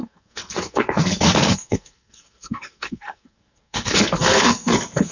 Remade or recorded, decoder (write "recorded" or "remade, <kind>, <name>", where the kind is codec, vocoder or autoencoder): remade, codec, SNAC